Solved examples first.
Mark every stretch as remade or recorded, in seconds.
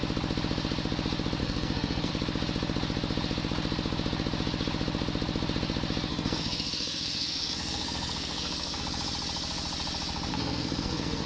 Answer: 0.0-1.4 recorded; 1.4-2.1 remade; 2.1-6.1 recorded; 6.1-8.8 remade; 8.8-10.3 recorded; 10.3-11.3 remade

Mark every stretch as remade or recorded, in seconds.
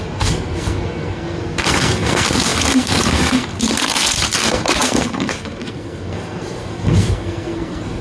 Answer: 0.0-8.0 remade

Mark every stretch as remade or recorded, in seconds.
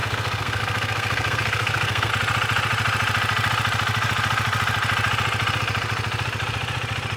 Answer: 0.0-2.1 remade; 2.1-7.2 recorded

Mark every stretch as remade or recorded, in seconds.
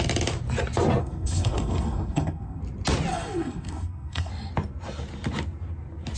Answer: 0.0-1.0 recorded; 1.0-2.6 remade; 2.6-3.1 recorded; 3.1-4.3 remade; 4.3-6.2 recorded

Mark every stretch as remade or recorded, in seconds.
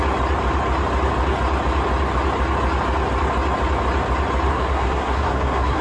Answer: 0.0-4.5 recorded; 4.5-5.8 remade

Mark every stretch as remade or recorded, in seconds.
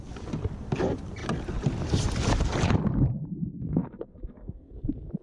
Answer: 0.0-3.5 recorded; 3.5-4.8 remade; 4.8-5.2 recorded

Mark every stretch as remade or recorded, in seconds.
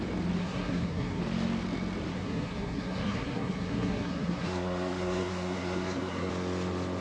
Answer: 0.0-0.4 recorded; 0.4-1.2 remade; 1.2-2.1 recorded; 2.1-6.3 remade; 6.3-7.0 recorded